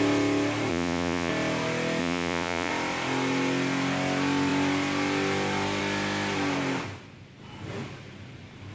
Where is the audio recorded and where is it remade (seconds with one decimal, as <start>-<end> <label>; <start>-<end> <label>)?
0.0-0.7 recorded; 0.7-1.3 remade; 1.3-2.0 recorded; 2.0-2.7 remade; 2.7-8.7 recorded